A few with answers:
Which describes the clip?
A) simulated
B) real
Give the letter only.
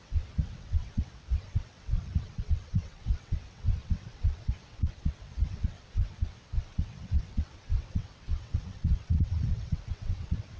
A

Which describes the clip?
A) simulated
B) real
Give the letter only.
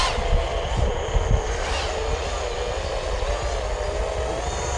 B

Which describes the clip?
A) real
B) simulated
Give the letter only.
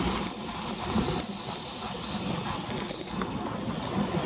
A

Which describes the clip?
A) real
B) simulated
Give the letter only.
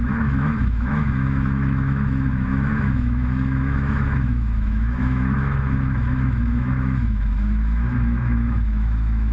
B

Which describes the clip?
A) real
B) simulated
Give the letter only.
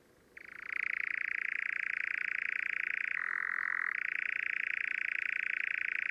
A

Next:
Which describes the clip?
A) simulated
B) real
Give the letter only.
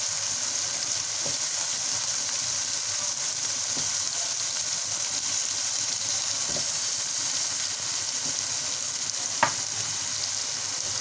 B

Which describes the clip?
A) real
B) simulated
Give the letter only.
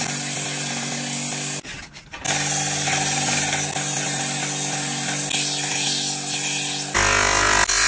A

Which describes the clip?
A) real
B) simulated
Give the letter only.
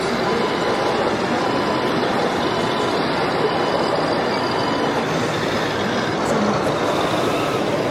A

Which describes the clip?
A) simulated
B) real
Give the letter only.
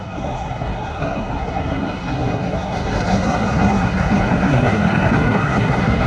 A